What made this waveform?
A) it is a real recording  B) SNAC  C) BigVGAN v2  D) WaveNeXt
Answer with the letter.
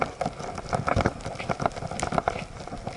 A